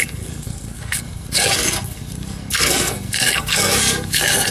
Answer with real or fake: fake